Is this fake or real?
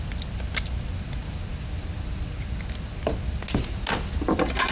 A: real